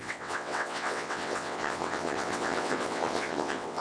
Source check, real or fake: fake